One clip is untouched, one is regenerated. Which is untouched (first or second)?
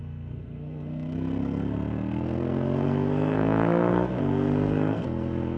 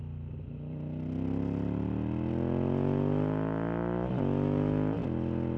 second